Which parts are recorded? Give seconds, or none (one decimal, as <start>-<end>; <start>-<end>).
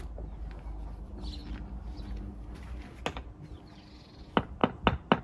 0.0-5.2